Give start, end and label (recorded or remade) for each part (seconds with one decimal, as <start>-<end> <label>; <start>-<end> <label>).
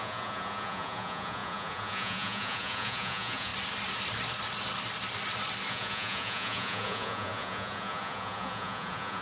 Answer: 0.0-3.5 remade; 3.5-5.7 recorded; 5.7-9.2 remade